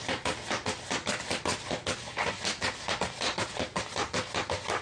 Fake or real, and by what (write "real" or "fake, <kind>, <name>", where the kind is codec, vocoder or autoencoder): real